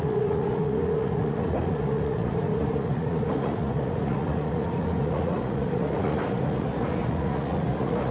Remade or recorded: remade